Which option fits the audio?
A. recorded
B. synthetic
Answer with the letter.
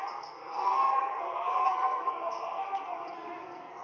B